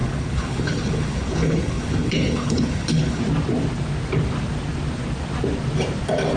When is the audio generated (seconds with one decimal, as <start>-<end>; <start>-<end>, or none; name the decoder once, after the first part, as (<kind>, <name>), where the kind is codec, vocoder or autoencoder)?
0.0-3.2 (codec, HILCodec)